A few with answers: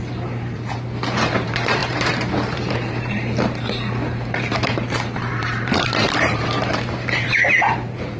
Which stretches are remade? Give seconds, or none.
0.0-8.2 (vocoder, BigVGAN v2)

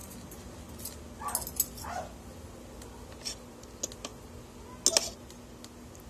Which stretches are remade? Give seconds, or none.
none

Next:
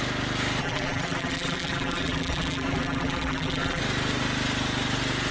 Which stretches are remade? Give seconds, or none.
0.6-3.8 (vocoder, BigVGAN v2)

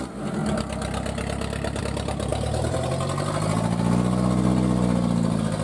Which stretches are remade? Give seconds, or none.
2.3-2.9 (vocoder, BigVGAN v2)

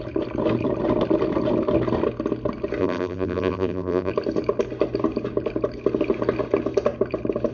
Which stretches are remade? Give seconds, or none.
2.8-4.1 (vocoder, BigVGAN v2)